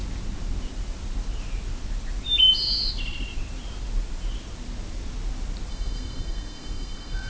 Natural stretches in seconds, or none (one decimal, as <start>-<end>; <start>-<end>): 0.0-5.7